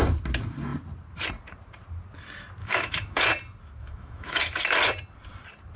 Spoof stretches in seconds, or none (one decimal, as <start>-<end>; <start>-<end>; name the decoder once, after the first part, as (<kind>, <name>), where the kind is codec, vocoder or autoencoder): 2.6-3.2 (autoencoder, DAC-VAE); 3.8-4.4